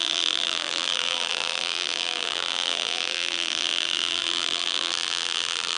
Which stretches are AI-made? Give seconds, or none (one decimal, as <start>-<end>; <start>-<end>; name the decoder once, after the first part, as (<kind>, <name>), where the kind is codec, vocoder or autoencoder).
0.0-5.8 (vocoder, BigVGAN v2)